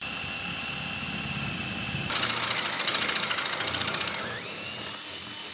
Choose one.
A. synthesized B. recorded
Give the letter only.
B